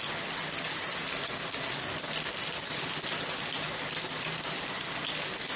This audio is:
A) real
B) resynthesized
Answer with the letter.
A